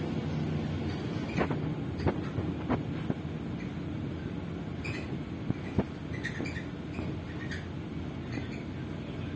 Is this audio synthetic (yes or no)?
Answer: no